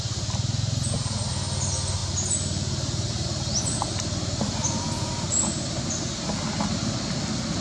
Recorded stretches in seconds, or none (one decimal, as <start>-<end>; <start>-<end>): 0.0-7.6